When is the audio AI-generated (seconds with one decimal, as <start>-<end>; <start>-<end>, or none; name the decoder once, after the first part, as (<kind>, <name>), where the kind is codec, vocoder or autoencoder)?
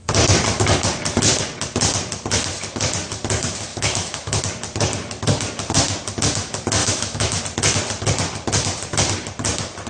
3.7-4.4 (autoencoder, DAC-VAE); 6.8-7.4